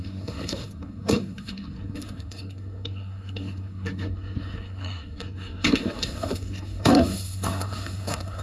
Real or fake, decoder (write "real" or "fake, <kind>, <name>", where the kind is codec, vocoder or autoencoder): fake, codec, SNAC